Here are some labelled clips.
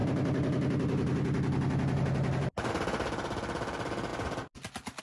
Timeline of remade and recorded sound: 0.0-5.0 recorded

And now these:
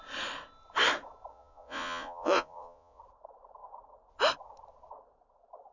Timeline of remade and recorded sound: 0.0-1.3 recorded; 1.3-3.0 remade; 3.0-5.7 recorded

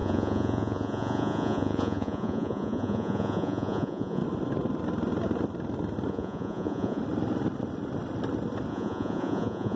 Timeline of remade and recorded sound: 0.0-4.2 remade; 4.2-6.1 recorded; 6.1-7.0 remade; 7.0-8.7 recorded; 8.7-9.8 remade

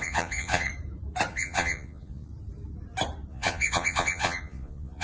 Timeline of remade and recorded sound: 0.0-0.7 remade; 0.7-1.3 recorded; 1.3-2.3 remade; 2.3-3.3 recorded; 3.3-5.0 remade

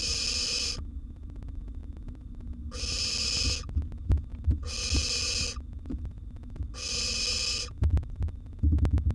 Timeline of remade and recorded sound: 0.0-9.1 recorded